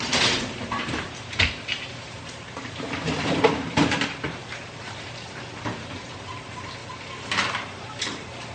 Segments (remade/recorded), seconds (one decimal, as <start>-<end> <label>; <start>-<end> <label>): 0.0-4.4 remade; 4.4-5.6 recorded; 5.6-6.8 remade; 6.8-7.5 recorded; 7.5-8.5 remade